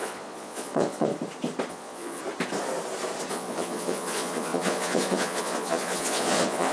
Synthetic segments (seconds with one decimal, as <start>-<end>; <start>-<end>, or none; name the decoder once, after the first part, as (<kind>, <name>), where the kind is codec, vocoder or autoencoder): 0.0-1.1 (vocoder, Vocos); 1.7-2.2; 3.3-6.7